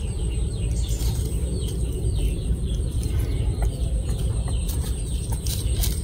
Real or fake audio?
fake